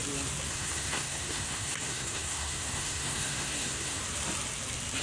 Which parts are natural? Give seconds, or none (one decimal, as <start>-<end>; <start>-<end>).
0.0-0.5; 4.0-5.0